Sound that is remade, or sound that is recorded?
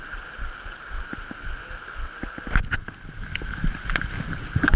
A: recorded